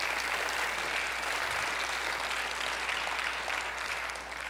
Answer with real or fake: real